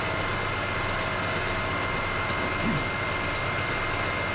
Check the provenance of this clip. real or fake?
real